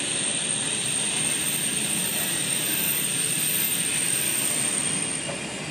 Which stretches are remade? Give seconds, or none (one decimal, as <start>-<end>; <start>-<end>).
none